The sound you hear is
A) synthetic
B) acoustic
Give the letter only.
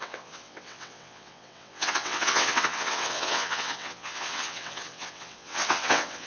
A